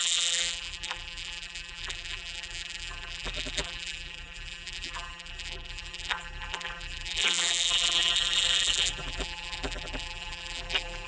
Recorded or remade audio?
remade